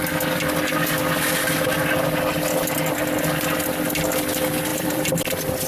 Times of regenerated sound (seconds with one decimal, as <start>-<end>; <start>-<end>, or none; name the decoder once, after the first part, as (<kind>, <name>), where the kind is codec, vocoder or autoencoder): 4.7-5.2 (vocoder, BigVGAN v2)